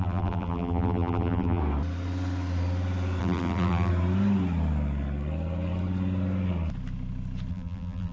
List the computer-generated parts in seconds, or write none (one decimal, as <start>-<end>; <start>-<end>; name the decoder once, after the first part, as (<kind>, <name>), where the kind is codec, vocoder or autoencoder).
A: 0.0-1.6 (vocoder, BigVGAN v2); 3.2-3.9; 7.5-8.1

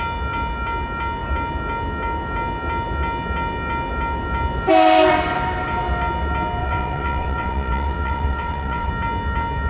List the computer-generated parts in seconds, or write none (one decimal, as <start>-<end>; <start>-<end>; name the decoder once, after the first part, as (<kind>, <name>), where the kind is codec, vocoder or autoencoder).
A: 6.6-8.9 (vocoder, WaveNeXt)

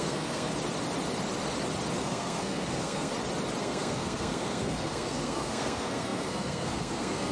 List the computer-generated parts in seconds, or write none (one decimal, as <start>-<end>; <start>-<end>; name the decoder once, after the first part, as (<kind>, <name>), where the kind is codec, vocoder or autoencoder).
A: 0.0-0.5 (codec, SNAC); 2.0-3.1; 3.6-7.3

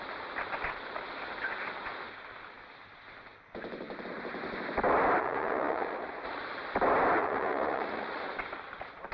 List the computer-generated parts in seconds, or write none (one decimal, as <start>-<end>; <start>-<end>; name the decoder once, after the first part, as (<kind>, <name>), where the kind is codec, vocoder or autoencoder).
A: 5.2-6.4 (vocoder, Vocos); 7.2-8.2

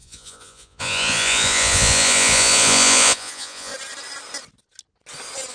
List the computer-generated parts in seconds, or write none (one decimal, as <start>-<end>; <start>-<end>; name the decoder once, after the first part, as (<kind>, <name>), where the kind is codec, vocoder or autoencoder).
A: 0.0-3.7 (vocoder, Vocos)

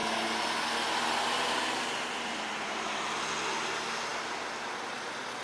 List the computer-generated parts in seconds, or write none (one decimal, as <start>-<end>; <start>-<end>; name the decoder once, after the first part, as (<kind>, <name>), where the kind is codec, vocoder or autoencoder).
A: none